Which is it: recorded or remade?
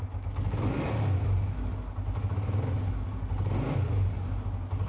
recorded